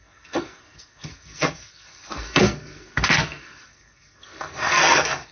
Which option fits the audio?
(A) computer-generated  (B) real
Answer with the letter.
A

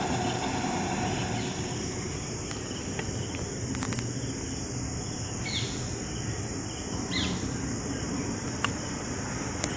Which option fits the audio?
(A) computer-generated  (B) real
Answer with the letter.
B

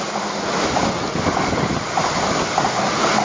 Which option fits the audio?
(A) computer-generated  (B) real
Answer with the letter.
B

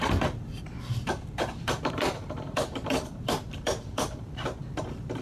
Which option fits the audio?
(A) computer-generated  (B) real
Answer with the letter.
A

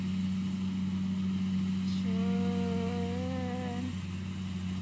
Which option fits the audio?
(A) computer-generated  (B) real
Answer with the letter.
B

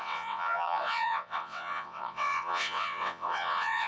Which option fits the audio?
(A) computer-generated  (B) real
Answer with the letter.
A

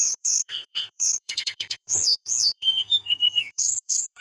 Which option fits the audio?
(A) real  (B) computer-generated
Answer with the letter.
B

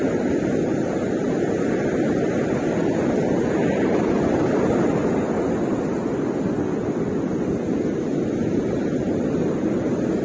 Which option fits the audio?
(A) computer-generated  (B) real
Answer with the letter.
B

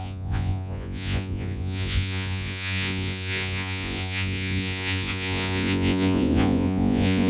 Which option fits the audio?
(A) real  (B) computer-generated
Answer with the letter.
B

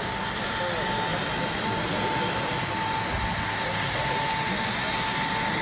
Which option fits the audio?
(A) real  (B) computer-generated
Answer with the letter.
A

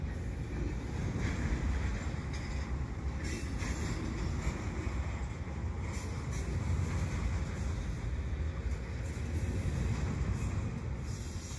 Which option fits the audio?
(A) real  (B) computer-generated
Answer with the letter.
A